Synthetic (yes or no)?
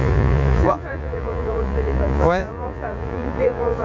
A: yes